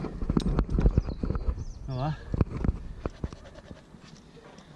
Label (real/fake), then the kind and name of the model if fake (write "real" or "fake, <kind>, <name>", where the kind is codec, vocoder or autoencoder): real